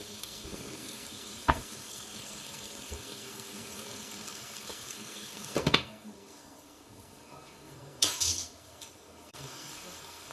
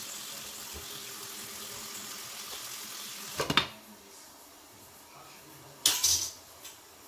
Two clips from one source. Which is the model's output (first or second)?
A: first